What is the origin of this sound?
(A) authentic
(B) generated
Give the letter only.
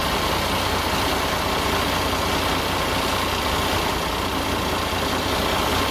A